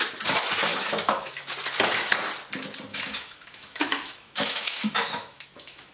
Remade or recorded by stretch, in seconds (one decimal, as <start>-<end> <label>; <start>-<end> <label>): 0.0-0.7 recorded; 0.7-1.4 remade; 1.4-2.9 recorded; 2.9-5.9 remade